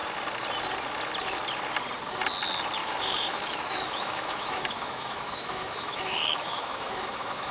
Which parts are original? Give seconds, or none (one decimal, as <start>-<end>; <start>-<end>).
0.0-2.8

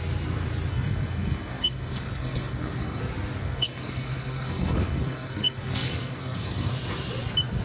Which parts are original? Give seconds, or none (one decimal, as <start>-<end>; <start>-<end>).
0.0-0.7; 3.0-3.4; 6.7-7.6

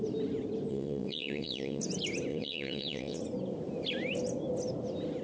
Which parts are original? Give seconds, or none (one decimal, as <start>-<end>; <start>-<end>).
0.0-0.7; 1.8-2.3; 3.2-5.2

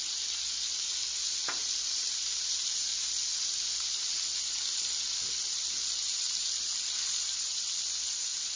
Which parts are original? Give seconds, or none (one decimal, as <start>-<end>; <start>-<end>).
0.0-8.6

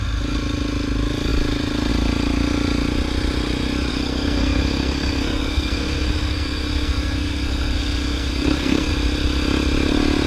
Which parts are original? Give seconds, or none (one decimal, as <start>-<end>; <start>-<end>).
0.0-3.9; 8.9-10.3

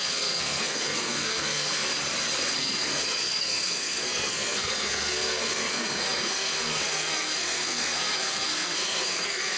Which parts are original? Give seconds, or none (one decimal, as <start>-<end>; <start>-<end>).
1.9-2.6